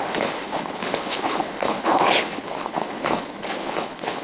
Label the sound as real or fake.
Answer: fake